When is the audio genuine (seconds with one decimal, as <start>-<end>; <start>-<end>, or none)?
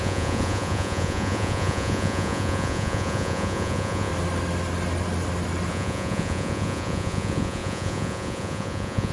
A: 4.1-5.7